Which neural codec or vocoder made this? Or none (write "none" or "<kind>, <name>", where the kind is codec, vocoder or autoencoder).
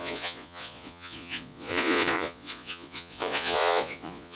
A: vocoder, Vocos